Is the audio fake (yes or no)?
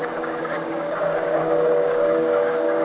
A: yes